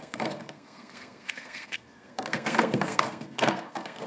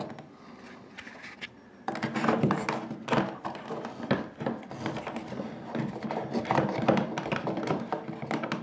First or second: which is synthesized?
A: first